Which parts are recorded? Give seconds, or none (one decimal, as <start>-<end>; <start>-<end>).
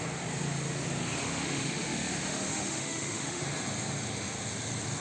0.0-1.2; 3.4-5.0